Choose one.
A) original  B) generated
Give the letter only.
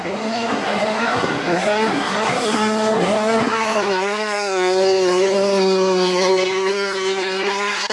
B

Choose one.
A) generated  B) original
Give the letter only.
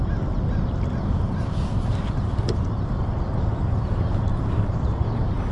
B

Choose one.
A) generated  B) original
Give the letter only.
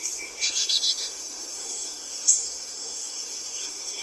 A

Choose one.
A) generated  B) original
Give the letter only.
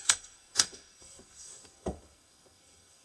A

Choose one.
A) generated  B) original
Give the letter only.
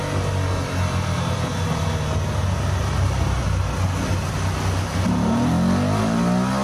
B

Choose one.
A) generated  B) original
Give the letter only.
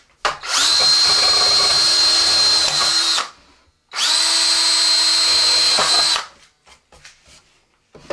B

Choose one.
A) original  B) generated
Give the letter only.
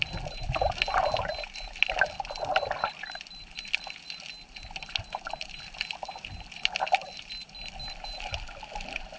A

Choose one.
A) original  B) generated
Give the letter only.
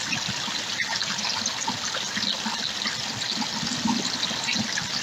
A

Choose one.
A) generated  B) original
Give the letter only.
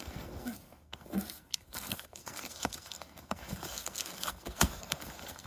A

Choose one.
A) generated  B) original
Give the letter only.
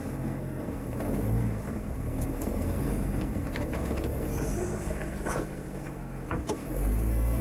A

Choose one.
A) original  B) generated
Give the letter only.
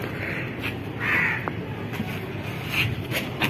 A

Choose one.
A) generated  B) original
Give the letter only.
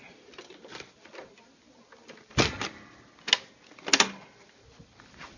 B